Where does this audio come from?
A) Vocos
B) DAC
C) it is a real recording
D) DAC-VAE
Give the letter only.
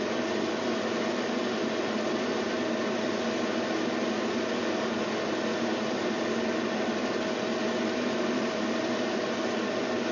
C